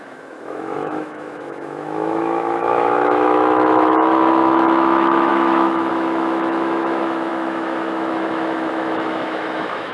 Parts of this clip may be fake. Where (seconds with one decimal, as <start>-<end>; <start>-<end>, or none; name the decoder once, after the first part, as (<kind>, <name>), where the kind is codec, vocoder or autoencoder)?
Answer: 0.0-9.9 (autoencoder, DAC-VAE)